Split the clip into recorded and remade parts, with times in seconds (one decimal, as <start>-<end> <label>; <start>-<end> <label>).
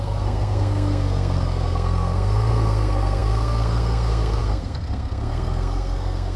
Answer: 0.0-6.4 remade